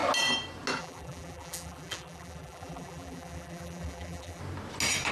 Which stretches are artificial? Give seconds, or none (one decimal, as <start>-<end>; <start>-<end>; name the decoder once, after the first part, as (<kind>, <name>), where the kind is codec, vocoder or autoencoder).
0.8-4.4 (vocoder, BigVGAN v2)

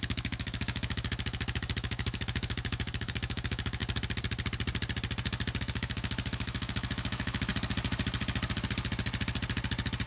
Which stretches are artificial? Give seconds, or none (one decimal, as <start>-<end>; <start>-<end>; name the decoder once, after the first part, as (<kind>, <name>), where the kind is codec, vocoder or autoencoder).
0.0-3.8 (autoencoder, DAC-VAE); 5.6-7.5

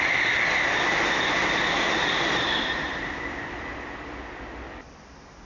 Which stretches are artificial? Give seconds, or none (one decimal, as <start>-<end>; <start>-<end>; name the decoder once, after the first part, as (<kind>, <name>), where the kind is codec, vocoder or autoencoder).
1.4-4.4 (vocoder, BigVGAN v2)

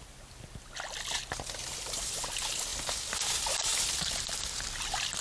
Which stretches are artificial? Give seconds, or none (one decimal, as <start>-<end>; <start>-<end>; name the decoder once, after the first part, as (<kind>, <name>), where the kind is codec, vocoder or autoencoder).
none

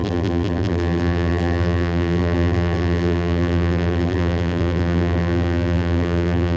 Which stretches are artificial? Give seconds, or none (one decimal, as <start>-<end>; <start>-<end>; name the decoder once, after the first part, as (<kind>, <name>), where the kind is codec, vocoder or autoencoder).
0.0-6.6 (vocoder, BigVGAN v2)

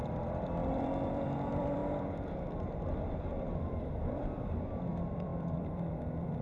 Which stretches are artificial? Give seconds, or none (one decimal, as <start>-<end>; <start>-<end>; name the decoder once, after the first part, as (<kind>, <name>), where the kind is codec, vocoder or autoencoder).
0.0-1.8 (vocoder, BigVGAN v2); 2.7-6.4

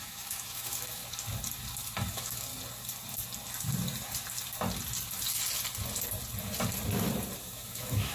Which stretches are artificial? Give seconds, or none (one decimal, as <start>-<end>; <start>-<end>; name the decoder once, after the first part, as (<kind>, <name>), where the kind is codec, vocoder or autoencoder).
0.0-1.0 (autoencoder, DAC-VAE); 2.1-2.5; 7.4-8.1

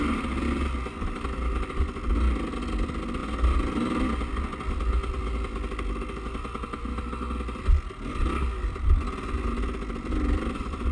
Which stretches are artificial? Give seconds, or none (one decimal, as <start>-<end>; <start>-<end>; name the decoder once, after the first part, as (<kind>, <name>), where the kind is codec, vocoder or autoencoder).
none